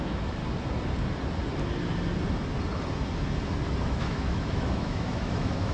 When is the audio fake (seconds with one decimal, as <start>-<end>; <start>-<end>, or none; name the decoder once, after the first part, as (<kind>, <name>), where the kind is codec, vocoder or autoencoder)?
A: 0.0-0.4 (autoencoder, DAC-VAE); 3.8-5.7